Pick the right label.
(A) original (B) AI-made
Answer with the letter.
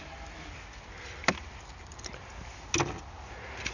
A